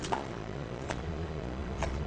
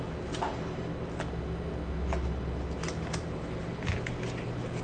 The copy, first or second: first